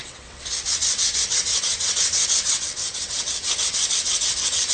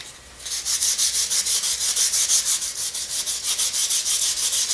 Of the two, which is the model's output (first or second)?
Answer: first